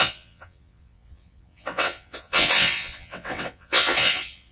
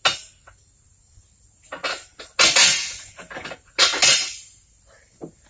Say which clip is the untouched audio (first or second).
second